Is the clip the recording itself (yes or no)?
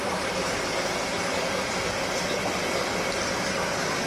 yes